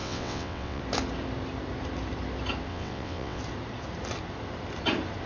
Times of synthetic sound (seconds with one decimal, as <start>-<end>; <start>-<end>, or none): 0.0-0.8; 2.7-3.4